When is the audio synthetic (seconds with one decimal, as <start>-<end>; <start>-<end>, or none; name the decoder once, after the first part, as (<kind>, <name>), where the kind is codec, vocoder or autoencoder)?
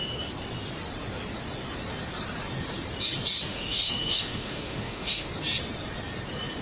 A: 3.5-5.3 (autoencoder, DAC-VAE)